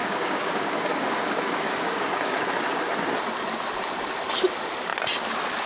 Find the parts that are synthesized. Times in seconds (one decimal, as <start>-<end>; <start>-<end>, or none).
0.0-2.4